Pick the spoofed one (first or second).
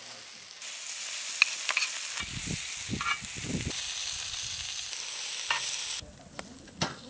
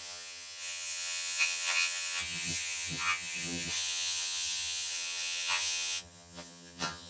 second